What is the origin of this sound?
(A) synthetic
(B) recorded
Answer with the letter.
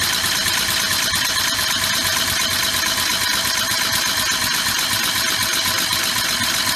B